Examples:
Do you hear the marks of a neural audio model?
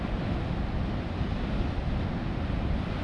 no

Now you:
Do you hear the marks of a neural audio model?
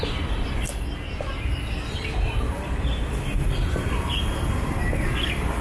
no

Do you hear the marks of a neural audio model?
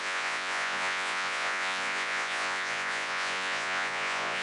yes